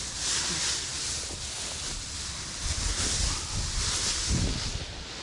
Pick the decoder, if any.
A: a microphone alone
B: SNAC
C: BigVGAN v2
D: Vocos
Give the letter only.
A